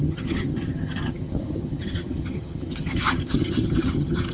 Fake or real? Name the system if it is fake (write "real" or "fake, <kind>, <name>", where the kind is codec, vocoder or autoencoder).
fake, vocoder, HiFi-GAN